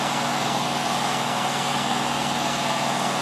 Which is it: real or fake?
fake